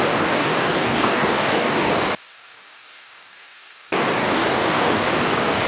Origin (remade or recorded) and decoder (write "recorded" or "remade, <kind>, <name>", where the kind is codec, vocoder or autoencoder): remade, codec, DAC